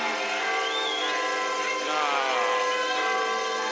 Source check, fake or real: real